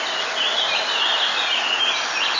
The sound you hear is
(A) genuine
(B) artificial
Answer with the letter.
A